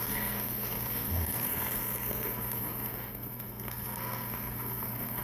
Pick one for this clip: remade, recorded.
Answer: remade